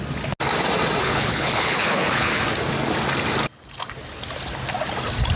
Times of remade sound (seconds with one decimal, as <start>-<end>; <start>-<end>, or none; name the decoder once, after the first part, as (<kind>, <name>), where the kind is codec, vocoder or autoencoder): 1.0-2.4 (codec, HILCodec)